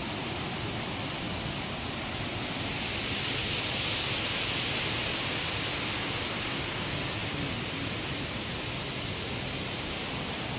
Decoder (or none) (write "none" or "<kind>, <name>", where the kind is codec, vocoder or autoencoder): none